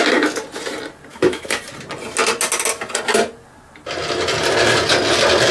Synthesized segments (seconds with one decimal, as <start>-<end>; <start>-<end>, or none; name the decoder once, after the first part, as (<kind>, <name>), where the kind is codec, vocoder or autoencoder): 1.1-1.6 (autoencoder, DAC-VAE)